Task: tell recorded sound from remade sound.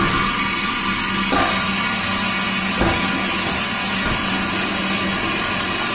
recorded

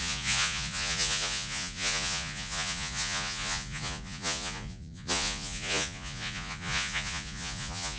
remade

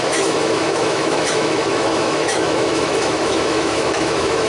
remade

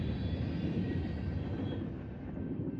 recorded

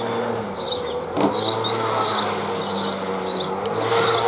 recorded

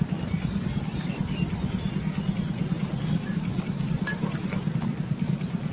recorded